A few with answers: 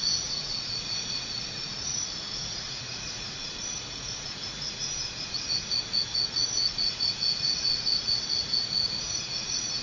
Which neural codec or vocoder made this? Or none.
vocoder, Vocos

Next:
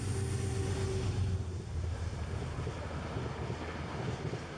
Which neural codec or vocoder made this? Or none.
none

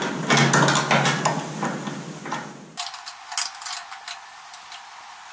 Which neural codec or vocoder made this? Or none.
none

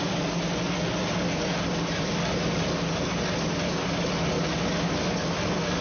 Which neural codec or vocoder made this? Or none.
none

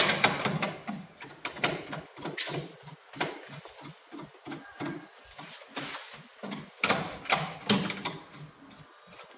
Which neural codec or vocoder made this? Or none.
none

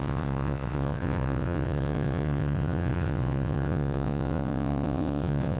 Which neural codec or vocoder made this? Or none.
vocoder, WaveNeXt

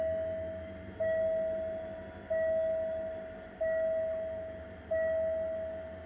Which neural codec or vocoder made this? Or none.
none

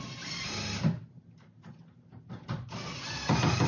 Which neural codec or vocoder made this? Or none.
none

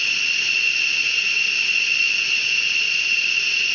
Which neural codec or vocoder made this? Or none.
none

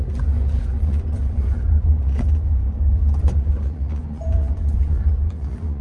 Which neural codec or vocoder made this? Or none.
vocoder, Vocos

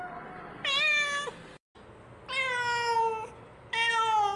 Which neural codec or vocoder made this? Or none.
none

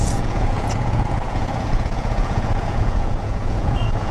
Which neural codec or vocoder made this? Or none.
vocoder, Vocos